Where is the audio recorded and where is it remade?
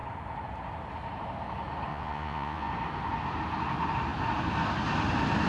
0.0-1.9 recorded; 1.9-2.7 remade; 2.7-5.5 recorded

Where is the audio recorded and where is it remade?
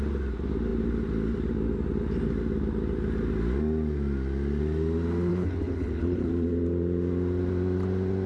0.0-5.3 recorded; 5.3-6.3 remade; 6.3-8.3 recorded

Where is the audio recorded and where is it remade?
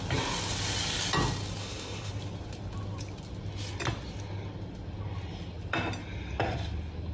0.0-1.6 recorded; 1.6-2.1 remade; 2.1-7.1 recorded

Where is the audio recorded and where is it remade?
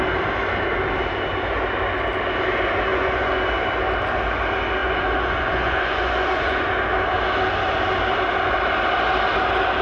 0.0-2.9 recorded; 2.9-3.4 remade; 3.4-4.8 recorded; 4.8-6.7 remade; 6.7-9.8 recorded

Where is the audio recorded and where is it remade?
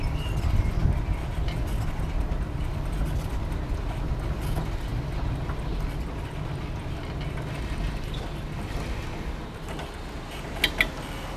0.0-11.4 recorded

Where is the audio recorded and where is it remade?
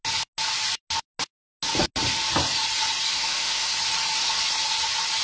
0.0-3.1 recorded; 3.1-3.7 remade; 3.7-5.2 recorded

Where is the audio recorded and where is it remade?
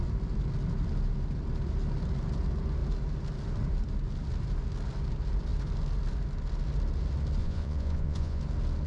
0.0-7.4 recorded; 7.4-8.4 remade; 8.4-8.9 recorded